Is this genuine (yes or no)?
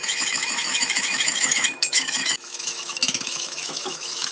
no